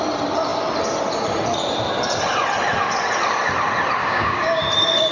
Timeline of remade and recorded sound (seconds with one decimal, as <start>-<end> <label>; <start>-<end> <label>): 0.0-4.0 recorded; 4.0-4.6 remade; 4.6-5.1 recorded